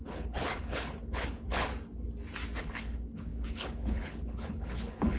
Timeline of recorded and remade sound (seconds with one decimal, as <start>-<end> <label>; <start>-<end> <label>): 0.0-1.7 remade; 1.7-2.6 recorded; 2.6-5.2 remade